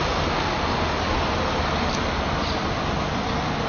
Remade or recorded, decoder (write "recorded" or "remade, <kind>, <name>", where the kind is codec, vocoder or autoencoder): recorded